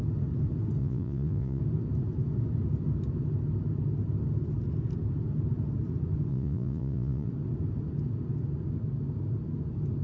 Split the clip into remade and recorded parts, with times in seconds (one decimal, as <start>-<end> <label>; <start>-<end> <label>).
0.0-0.8 recorded; 0.8-1.6 remade; 1.6-6.3 recorded; 6.3-7.3 remade; 7.3-10.0 recorded